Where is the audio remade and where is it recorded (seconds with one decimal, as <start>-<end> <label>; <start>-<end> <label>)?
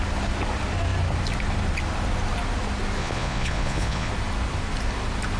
0.0-3.0 recorded; 3.0-4.1 remade; 4.1-5.4 recorded